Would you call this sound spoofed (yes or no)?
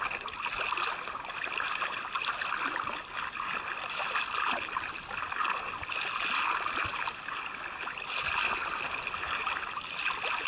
no